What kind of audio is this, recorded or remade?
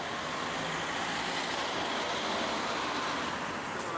recorded